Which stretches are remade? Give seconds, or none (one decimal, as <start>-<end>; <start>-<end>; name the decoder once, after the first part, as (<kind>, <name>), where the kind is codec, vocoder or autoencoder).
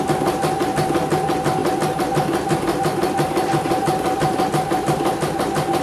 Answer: none